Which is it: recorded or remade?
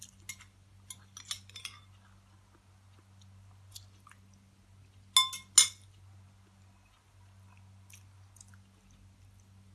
recorded